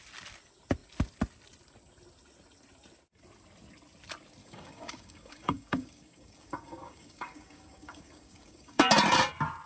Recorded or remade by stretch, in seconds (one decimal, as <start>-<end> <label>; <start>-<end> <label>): 0.0-4.4 recorded; 4.4-8.9 remade; 8.9-9.7 recorded